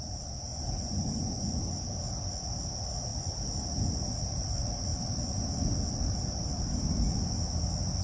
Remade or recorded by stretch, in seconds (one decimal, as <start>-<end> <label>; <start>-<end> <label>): 0.0-0.5 recorded; 0.5-1.7 remade; 1.7-8.0 recorded